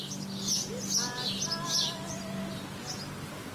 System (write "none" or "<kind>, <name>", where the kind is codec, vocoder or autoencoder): none